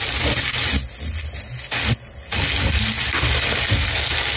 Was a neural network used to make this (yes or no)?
no